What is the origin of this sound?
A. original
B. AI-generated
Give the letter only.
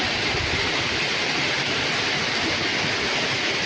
A